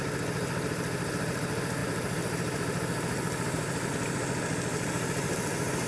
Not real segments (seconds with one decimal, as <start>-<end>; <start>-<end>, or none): 1.8-3.9; 4.7-5.9